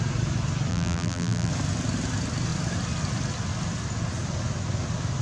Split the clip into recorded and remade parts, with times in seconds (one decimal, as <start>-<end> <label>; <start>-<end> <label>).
0.0-0.7 recorded; 0.7-1.5 remade; 1.5-5.2 recorded